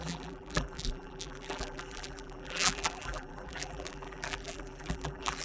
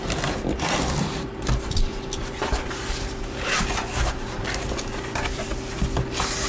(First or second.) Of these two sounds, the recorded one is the second